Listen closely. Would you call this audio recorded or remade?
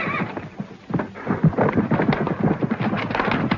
recorded